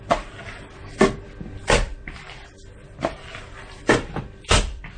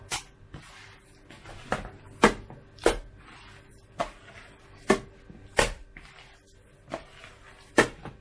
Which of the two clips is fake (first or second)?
first